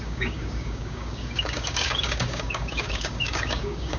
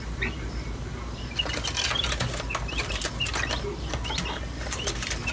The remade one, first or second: first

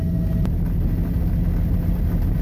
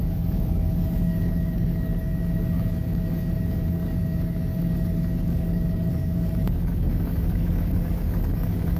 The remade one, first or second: second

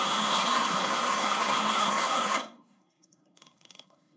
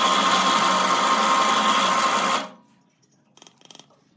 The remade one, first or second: first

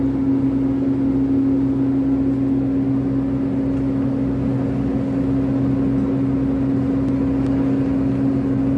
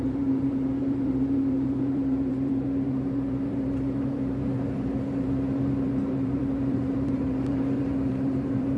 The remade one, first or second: second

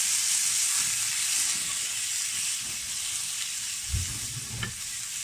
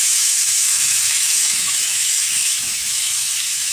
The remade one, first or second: second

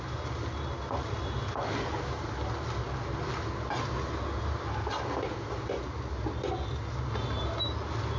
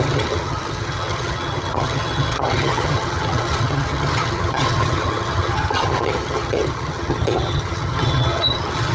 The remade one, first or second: second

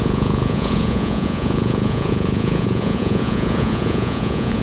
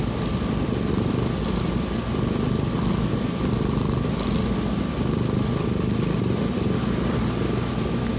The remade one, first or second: first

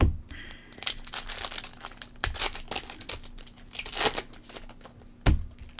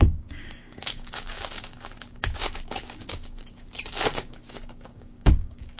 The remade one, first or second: second